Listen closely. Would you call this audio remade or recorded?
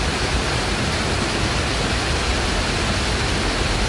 recorded